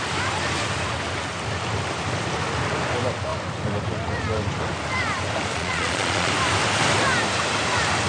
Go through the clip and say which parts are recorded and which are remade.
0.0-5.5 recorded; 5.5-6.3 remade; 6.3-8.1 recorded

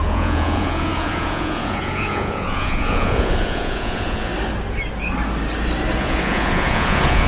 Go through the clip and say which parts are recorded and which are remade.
0.0-4.3 remade; 4.3-6.0 recorded; 6.0-7.3 remade

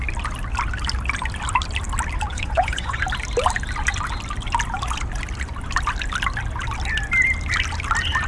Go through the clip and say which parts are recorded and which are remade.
0.0-2.3 recorded; 2.3-3.0 remade; 3.0-8.3 recorded